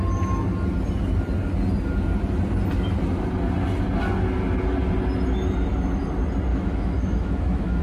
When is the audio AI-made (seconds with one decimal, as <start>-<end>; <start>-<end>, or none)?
6.5-7.8